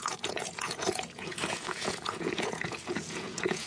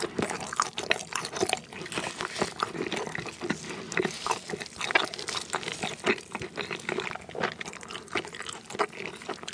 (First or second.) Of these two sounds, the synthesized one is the first